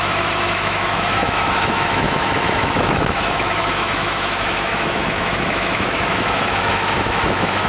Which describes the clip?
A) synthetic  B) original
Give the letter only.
A